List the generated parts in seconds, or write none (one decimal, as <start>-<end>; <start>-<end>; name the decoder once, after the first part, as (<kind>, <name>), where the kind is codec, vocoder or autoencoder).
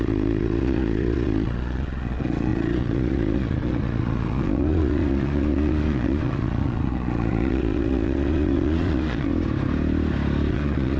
0.0-9.3 (vocoder, Vocos); 10.5-11.0